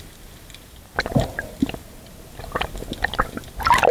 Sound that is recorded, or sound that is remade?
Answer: recorded